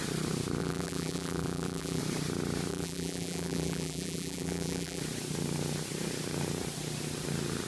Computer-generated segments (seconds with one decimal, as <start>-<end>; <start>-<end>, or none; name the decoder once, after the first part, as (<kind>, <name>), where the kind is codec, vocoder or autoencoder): 0.6-2.0 (vocoder, BigVGAN v2); 2.7-5.0